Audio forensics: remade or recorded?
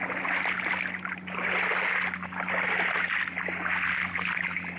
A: recorded